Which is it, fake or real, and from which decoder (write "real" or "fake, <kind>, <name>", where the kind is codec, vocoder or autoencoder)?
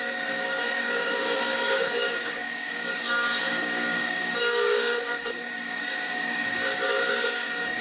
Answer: fake, codec, DAC